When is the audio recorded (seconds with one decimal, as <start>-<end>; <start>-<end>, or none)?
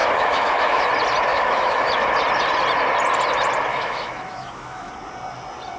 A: 0.9-1.3; 1.9-3.7; 4.9-5.8